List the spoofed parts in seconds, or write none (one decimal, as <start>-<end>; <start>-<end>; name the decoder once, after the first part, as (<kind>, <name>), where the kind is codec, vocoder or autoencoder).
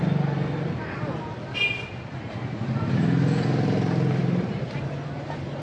4.2-5.6 (vocoder, BigVGAN v2)